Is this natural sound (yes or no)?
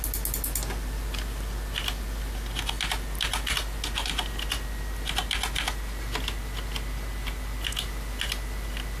yes